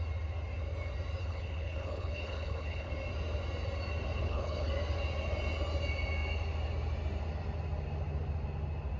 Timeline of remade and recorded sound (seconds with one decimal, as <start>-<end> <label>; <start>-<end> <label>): 0.0-1.2 recorded; 1.2-2.9 remade; 2.9-4.2 recorded; 4.2-4.7 remade; 4.7-9.0 recorded

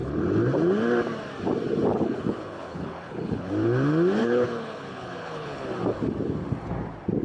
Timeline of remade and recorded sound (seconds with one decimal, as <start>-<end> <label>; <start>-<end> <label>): 0.0-1.9 recorded; 1.9-3.5 remade; 3.5-4.2 recorded; 4.2-5.7 remade; 5.7-7.2 recorded